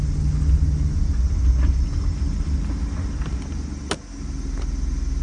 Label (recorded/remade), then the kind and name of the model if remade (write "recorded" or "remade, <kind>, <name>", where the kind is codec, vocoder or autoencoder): recorded